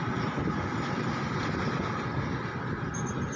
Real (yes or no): yes